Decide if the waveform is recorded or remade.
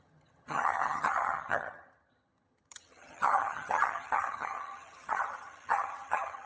remade